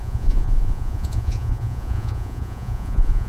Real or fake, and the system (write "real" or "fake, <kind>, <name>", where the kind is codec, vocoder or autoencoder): fake, vocoder, Vocos